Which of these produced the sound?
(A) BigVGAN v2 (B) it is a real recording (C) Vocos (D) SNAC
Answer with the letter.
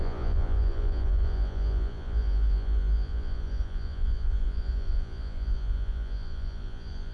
C